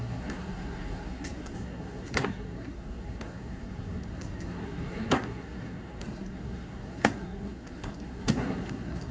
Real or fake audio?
fake